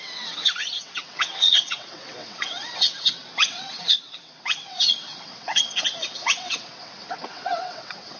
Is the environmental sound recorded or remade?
remade